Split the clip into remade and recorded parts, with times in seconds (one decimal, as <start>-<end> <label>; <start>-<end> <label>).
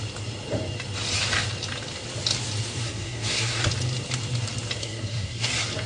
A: 0.0-2.8 recorded; 2.8-3.6 remade; 3.6-4.8 recorded; 4.8-5.5 remade; 5.5-5.9 recorded